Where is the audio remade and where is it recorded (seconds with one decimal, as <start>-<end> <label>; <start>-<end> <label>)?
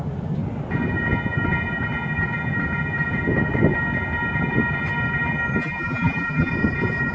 0.0-5.6 recorded; 5.6-6.5 remade; 6.5-7.1 recorded